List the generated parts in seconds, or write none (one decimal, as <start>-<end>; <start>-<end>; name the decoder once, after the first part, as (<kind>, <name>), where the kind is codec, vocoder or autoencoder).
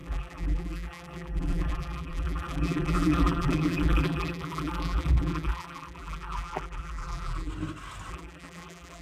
0.0-7.5 (vocoder, BigVGAN v2); 8.1-9.0